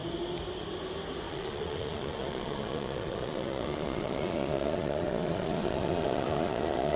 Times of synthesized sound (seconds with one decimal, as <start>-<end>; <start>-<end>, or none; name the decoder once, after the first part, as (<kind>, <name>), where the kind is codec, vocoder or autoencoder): 1.3-7.0 (vocoder, Vocos)